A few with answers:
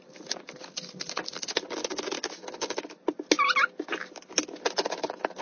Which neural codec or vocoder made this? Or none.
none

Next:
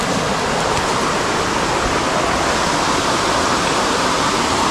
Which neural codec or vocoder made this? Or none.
none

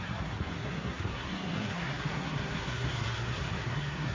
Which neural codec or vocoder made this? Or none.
codec, SNAC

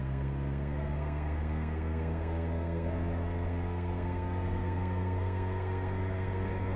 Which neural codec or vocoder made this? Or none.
codec, SNAC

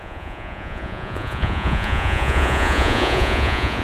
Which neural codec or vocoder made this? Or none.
vocoder, Vocos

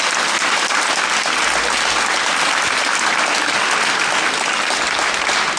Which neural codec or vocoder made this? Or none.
none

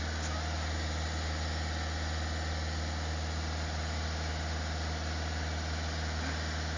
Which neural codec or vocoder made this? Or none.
none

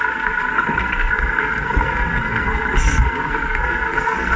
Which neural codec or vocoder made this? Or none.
codec, SNAC